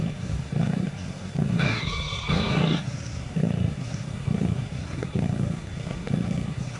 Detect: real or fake fake